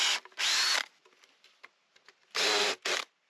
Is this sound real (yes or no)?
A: yes